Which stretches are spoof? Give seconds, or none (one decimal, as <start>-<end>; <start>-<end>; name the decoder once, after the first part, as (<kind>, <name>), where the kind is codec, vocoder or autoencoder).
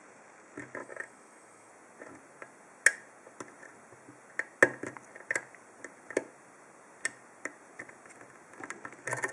0.8-1.7 (autoencoder, DAC-VAE)